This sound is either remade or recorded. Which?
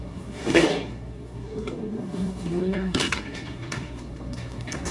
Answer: remade